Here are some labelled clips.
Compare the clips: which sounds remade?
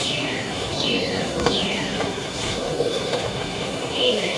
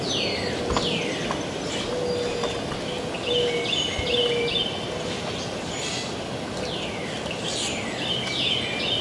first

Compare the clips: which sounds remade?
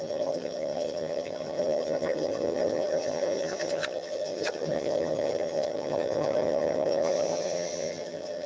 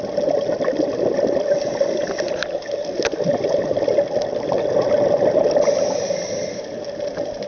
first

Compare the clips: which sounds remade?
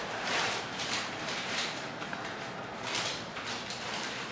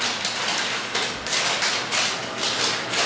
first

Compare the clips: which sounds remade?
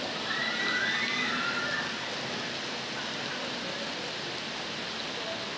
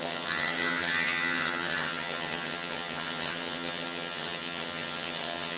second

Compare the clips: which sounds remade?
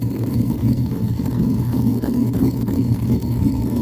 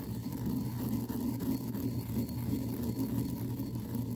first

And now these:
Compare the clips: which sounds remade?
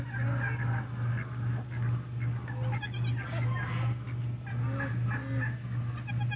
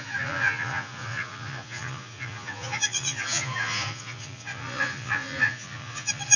second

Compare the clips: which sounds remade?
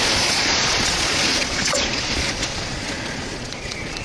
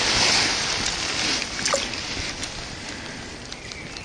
first